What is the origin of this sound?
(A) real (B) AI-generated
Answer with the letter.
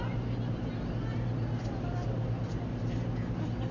A